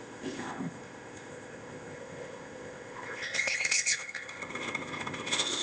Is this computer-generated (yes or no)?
yes